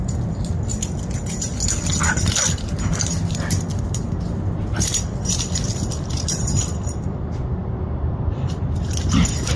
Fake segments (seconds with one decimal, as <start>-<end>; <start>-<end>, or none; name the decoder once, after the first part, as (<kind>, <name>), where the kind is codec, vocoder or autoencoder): 0.0-0.7 (vocoder, BigVGAN v2); 4.1-9.6